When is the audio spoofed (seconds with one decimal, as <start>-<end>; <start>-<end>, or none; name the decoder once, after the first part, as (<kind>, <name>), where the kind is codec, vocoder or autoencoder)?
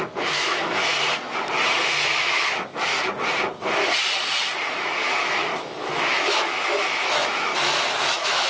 0.0-0.9 (autoencoder, DAC-VAE); 1.8-2.9; 4.7-7.5; 8.0-8.5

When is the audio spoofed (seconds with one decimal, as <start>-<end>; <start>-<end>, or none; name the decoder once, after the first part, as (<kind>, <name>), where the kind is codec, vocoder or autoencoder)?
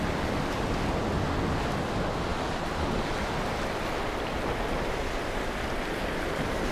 none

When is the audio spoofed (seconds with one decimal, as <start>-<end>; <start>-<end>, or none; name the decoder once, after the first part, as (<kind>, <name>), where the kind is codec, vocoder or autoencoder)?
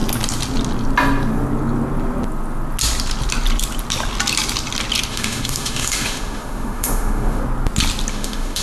5.1-7.4 (autoencoder, DAC-VAE); 8.1-8.6